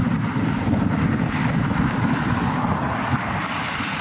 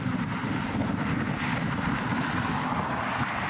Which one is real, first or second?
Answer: second